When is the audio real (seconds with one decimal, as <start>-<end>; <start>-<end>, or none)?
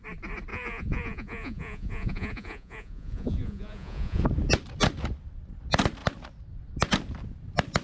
0.0-0.5; 4.2-7.8